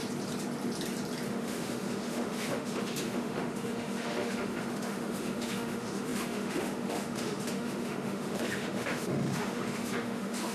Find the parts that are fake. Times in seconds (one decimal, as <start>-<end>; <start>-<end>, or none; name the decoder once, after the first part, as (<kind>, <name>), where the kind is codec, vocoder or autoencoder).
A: 1.3-10.5 (autoencoder, DAC-VAE)